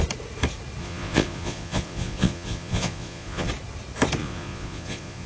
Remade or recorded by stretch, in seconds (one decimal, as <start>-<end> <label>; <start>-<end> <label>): 0.0-0.8 recorded; 0.8-3.5 remade; 3.5-4.2 recorded; 4.2-5.3 remade